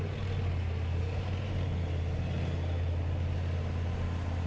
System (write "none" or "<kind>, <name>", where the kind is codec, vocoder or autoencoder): none